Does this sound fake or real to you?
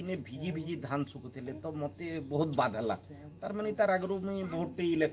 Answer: fake